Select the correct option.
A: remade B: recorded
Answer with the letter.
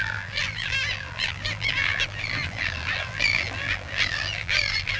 A